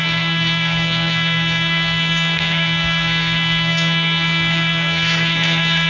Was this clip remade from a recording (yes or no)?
yes